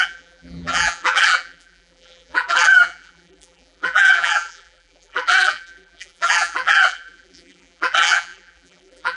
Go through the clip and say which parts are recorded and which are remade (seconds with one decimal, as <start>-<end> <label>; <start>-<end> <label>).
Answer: 0.0-9.2 remade